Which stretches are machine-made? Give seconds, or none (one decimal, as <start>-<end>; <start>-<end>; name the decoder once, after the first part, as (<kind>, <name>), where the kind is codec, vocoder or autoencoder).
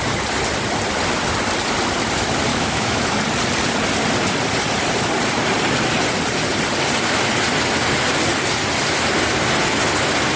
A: 2.5-3.1 (autoencoder, DAC-VAE)